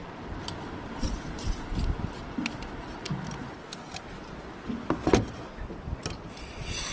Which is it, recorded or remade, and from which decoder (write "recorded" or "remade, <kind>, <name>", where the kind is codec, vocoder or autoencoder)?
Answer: recorded